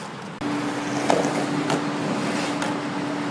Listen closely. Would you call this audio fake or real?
real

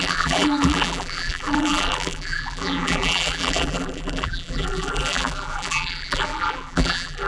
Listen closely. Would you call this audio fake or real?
fake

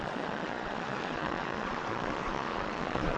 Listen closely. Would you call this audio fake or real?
fake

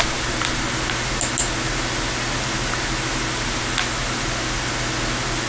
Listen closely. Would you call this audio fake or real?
real